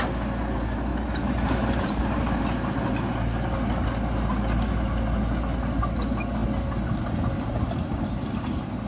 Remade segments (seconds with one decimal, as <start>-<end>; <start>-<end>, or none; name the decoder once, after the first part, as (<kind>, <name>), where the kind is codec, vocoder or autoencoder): 0.9-2.4 (vocoder, BigVGAN v2)